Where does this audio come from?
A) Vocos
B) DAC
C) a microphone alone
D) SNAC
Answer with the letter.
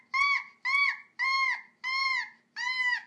C